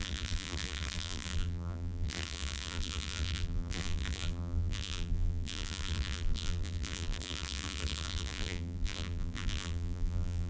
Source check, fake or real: fake